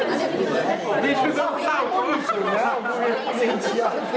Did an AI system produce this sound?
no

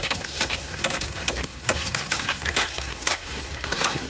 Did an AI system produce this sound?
yes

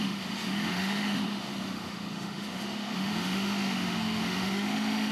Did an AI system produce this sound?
yes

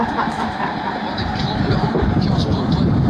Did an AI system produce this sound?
yes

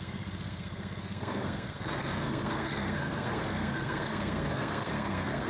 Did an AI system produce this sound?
yes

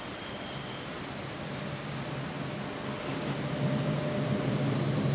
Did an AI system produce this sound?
no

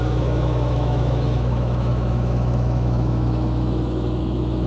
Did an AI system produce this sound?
yes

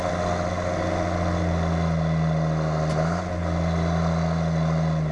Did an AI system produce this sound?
no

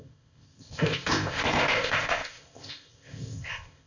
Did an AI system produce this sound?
yes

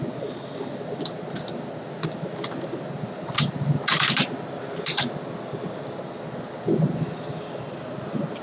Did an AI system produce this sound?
no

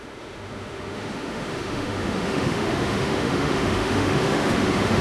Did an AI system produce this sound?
yes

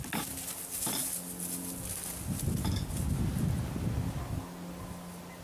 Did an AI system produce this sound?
no